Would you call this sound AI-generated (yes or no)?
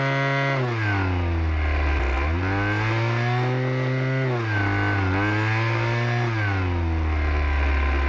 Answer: no